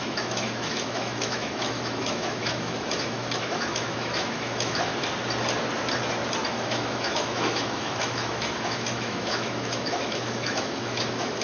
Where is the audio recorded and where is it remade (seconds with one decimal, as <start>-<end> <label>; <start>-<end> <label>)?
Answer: 0.0-4.9 remade; 4.9-6.5 recorded; 6.5-11.4 remade